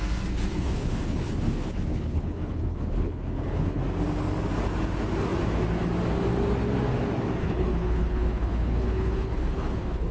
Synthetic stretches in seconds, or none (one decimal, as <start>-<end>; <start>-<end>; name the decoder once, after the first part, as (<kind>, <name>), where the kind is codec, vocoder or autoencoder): 0.5-3.8 (codec, HILCodec); 7.4-10.1